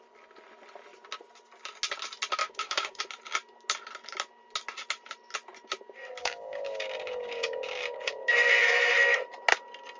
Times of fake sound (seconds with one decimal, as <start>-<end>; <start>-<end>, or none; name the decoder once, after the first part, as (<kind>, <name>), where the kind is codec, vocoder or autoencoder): 2.4-3.0 (codec, DAC); 6.2-8.2